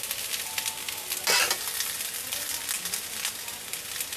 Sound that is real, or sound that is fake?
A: real